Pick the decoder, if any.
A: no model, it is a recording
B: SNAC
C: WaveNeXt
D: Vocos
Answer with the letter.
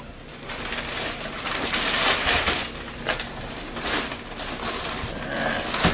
A